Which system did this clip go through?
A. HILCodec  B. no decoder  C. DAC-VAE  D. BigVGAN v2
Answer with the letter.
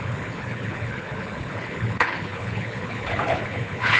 A